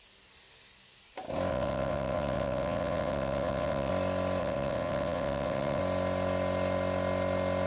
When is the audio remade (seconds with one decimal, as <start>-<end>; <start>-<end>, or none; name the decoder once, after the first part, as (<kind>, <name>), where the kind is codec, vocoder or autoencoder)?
1.5-3.9 (vocoder, WaveNeXt); 4.4-5.8